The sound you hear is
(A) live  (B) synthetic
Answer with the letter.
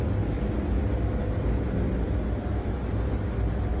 A